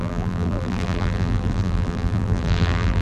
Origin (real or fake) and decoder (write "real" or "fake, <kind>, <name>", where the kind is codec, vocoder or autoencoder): fake, vocoder, BigVGAN v2